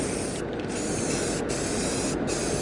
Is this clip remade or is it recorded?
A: recorded